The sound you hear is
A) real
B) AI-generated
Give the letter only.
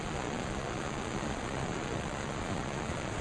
B